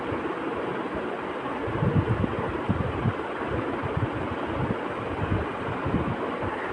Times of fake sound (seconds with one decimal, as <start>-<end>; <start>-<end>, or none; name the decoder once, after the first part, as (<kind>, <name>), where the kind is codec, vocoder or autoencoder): none